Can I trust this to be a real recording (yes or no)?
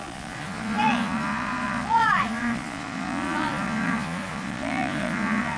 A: no